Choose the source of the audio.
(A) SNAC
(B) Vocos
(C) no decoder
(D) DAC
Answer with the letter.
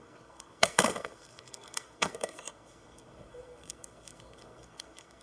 A